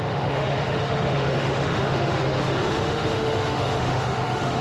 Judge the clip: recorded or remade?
remade